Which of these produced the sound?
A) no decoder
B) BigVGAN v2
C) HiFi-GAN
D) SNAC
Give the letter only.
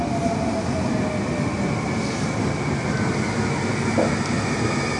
A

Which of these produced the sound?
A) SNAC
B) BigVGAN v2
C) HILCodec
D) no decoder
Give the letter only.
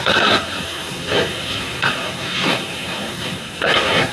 A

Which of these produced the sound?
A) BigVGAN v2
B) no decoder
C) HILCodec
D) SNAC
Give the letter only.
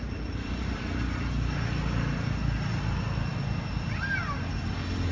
B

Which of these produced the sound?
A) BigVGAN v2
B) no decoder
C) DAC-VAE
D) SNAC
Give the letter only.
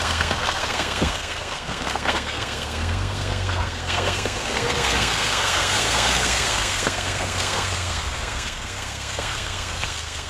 D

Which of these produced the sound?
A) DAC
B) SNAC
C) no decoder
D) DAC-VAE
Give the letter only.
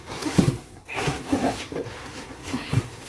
B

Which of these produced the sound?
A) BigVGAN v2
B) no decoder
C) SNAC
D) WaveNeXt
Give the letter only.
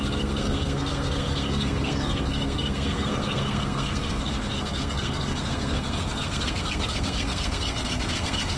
C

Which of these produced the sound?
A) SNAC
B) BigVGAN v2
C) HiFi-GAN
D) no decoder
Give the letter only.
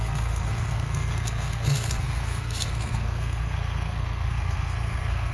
A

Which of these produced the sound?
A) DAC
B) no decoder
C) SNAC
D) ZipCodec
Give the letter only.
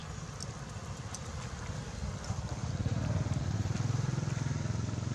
B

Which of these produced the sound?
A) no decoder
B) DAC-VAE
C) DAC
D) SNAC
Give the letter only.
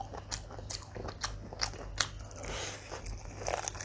A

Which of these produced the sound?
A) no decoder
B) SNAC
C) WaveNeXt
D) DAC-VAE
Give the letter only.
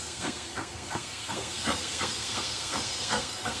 B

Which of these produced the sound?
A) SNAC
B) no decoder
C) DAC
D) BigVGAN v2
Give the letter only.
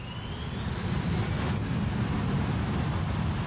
B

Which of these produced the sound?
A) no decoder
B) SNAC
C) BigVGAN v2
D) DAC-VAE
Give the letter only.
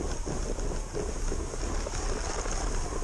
A